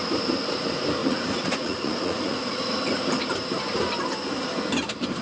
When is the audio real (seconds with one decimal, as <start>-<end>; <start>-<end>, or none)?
0.0-1.0; 2.8-5.2